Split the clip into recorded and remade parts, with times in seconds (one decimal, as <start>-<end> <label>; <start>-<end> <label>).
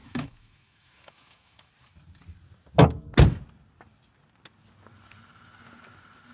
0.0-1.7 remade; 1.7-6.3 recorded